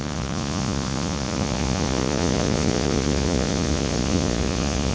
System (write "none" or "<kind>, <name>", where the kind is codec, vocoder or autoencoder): vocoder, Vocos